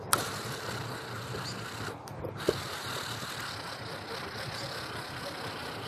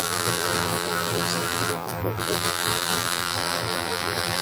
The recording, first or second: first